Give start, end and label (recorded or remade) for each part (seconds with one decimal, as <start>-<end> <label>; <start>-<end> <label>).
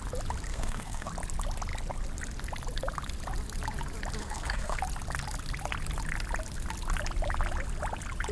0.0-0.5 recorded; 0.5-1.1 remade; 1.1-4.2 recorded; 4.2-4.8 remade; 4.8-8.3 recorded